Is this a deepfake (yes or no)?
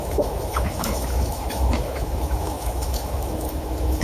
yes